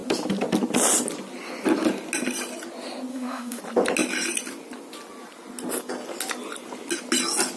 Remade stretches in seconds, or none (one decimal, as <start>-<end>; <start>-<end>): 3.1-3.6

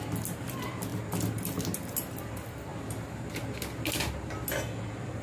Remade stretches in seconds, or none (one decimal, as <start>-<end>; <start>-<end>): none

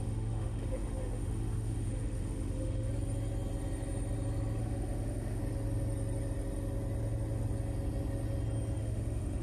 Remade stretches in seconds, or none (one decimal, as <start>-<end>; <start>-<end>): 0.0-2.9; 4.6-5.4; 8.8-9.4